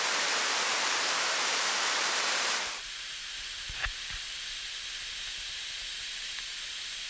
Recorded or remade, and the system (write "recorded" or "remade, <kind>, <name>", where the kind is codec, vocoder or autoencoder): remade, vocoder, BigVGAN v2